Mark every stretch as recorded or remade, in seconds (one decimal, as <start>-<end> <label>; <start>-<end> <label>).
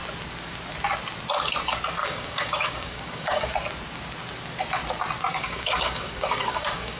0.0-2.0 recorded; 2.0-3.5 remade; 3.5-5.3 recorded; 5.3-7.0 remade